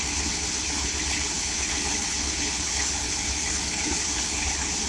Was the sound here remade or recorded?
remade